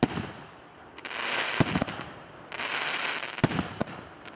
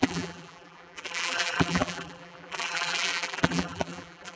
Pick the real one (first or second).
first